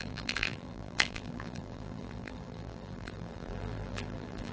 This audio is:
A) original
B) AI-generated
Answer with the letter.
B